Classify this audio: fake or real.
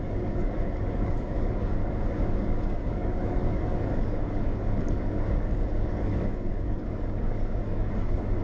fake